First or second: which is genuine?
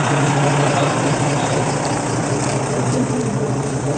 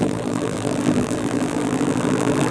first